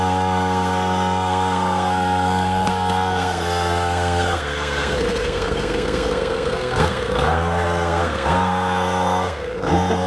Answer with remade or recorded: remade